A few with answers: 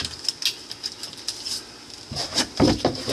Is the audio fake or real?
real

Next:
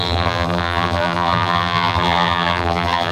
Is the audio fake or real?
fake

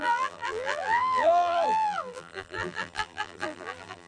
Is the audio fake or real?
fake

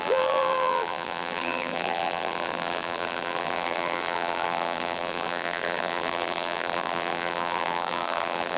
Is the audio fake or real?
fake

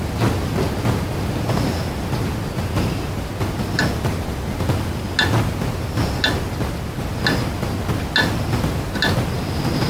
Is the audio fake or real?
real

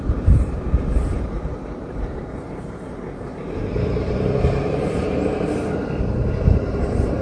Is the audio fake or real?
fake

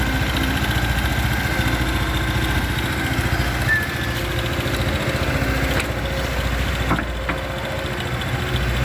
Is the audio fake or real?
real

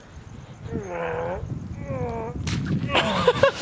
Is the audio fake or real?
real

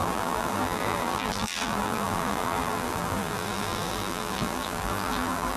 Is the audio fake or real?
fake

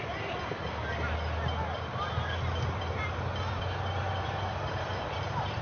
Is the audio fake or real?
fake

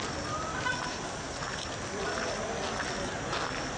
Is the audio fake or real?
real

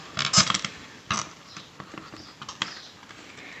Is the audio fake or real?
real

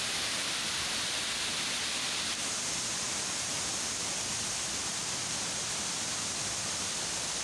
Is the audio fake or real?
fake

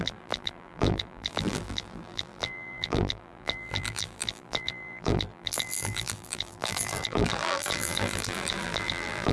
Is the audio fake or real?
fake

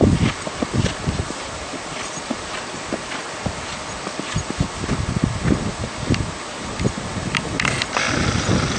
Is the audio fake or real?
real